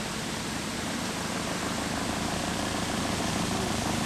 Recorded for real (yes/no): yes